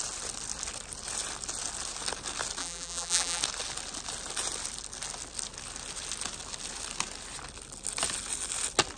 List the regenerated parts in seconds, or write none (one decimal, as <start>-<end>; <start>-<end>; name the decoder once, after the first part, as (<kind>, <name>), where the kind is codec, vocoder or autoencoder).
2.6-3.4 (vocoder, BigVGAN v2)